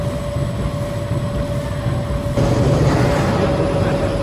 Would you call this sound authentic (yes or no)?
yes